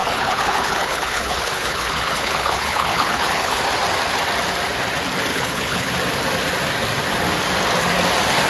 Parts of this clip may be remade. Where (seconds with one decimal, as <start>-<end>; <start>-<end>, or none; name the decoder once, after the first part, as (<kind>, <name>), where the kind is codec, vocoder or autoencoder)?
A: 0.0-3.6 (codec, HILCodec); 5.3-5.9